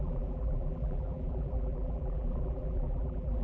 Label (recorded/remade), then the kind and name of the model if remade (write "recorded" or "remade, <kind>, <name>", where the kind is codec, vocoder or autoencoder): remade, vocoder, BigVGAN v2